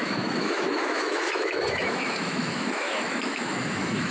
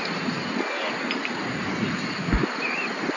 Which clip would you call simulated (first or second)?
first